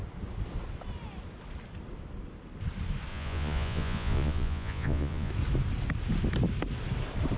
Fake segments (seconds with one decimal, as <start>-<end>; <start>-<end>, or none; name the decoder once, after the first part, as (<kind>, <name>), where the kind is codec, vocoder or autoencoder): 3.1-5.3 (vocoder, Vocos)

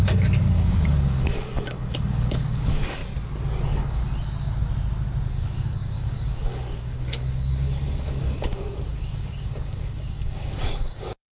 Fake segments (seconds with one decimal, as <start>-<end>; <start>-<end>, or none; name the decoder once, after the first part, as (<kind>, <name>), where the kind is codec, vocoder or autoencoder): 0.0-3.0 (codec, DAC); 3.6-4.0; 5.3-11.3

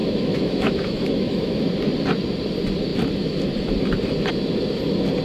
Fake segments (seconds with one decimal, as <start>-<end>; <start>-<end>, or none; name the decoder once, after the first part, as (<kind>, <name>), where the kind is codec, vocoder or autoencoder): 0.0-1.6 (autoencoder, DAC-VAE)

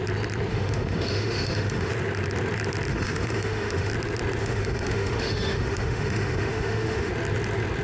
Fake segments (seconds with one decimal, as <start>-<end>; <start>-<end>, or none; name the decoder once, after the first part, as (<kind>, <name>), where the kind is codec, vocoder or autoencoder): 0.5-1.9 (autoencoder, DAC-VAE); 2.9-3.9; 4.4-7.1

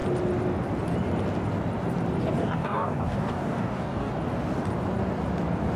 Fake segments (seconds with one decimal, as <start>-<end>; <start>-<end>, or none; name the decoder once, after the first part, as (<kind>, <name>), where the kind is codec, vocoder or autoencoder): 2.4-4.1 (codec, DAC)

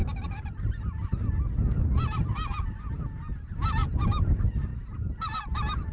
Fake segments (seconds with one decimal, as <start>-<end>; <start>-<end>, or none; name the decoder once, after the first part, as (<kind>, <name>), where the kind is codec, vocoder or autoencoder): none

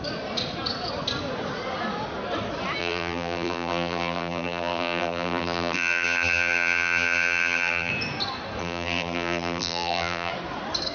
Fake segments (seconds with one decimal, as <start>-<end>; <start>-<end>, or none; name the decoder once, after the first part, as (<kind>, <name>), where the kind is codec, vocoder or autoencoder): 2.8-7.9 (vocoder, BigVGAN v2); 8.6-10.3

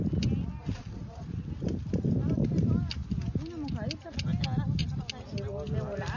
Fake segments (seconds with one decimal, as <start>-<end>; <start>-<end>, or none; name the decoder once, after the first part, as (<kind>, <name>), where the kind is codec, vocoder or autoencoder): 0.6-1.4 (vocoder, Vocos)